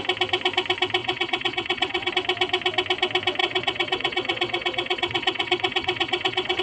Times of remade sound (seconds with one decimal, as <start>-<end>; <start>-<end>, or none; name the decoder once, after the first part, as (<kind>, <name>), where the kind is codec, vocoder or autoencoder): 1.0-2.1 (vocoder, WaveNeXt); 3.4-6.6